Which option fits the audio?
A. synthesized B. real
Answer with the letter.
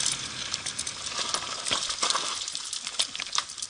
B